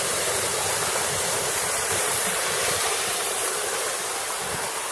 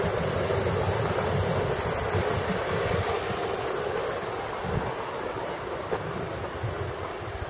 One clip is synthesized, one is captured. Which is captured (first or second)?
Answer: second